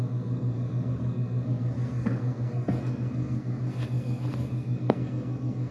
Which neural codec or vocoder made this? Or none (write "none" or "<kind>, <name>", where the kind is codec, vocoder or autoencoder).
codec, SNAC